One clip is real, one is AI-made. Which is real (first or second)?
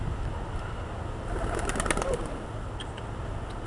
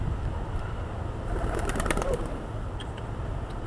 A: first